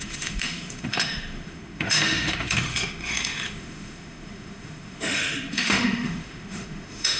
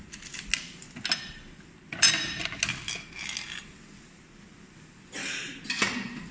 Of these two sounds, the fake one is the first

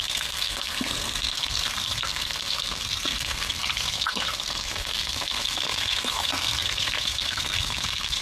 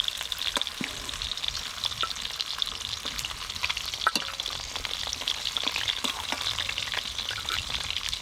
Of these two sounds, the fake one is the first